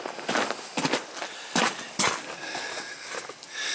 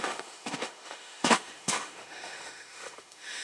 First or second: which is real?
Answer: first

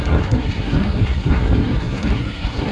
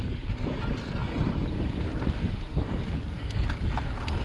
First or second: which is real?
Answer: second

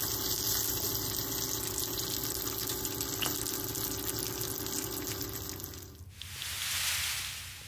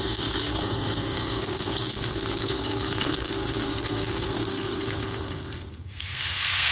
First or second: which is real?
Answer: first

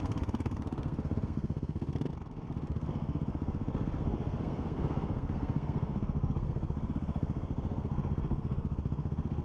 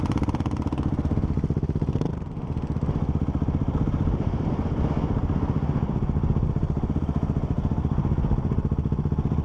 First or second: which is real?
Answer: second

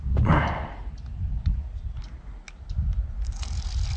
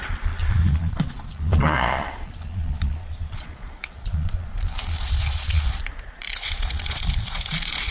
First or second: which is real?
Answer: first